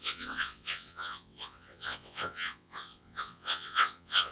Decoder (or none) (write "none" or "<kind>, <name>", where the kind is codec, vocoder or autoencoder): vocoder, WaveNeXt